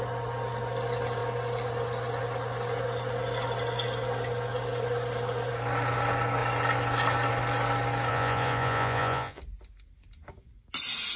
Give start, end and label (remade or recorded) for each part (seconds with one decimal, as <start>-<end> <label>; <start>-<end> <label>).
0.0-8.1 recorded; 8.1-9.4 remade; 9.4-11.2 recorded